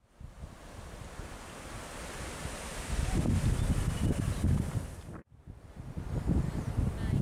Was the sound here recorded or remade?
recorded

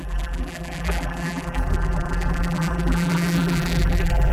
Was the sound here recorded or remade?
remade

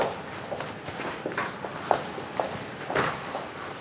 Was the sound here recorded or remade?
remade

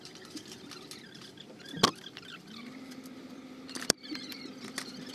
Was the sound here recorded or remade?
remade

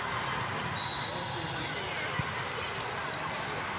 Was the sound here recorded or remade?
recorded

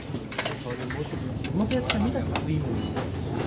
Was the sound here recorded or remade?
recorded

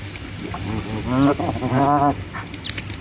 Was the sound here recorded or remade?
recorded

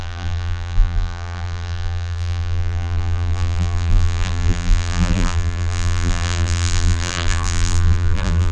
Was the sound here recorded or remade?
remade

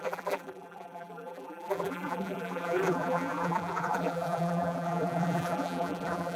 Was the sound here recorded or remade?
remade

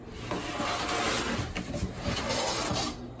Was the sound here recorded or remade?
recorded